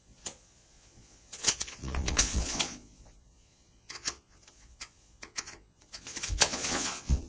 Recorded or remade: remade